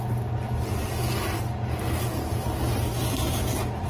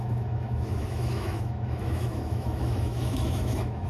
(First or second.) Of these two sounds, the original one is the first